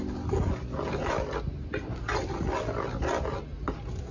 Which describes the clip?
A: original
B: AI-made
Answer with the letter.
A